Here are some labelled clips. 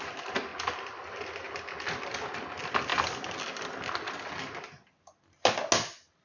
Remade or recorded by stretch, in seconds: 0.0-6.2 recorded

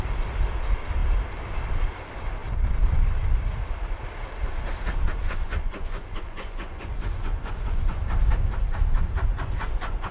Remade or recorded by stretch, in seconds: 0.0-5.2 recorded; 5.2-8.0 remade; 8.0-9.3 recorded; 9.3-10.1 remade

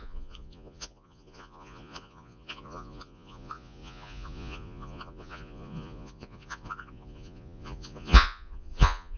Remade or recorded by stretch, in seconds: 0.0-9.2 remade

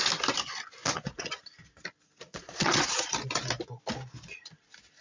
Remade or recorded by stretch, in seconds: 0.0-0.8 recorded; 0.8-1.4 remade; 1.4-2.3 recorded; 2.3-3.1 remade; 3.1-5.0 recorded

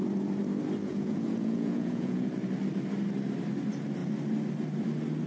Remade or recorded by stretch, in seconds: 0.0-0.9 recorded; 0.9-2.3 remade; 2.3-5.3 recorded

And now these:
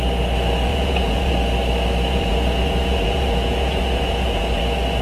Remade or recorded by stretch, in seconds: 0.0-0.7 recorded; 0.7-1.3 remade; 1.3-2.1 recorded; 2.1-4.6 remade; 4.6-5.0 recorded

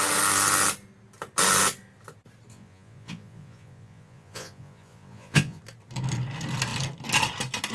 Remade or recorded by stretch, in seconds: 0.0-2.5 recorded; 2.5-5.6 remade; 5.6-7.7 recorded